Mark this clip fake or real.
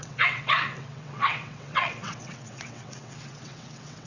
fake